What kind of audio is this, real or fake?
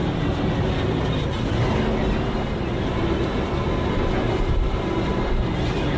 real